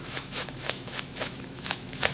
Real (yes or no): no